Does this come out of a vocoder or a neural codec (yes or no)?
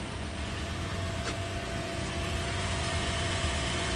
yes